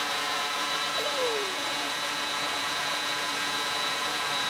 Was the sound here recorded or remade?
remade